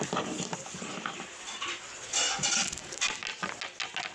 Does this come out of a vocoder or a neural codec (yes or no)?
no